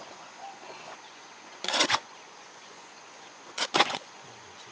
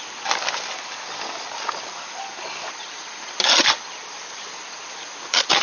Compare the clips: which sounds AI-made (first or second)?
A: first